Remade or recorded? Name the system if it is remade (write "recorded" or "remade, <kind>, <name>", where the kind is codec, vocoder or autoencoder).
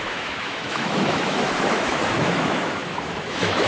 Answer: remade, autoencoder, DAC-VAE